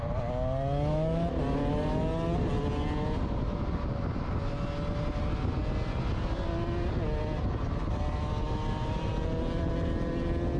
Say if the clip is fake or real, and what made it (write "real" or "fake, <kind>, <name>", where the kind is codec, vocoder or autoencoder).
real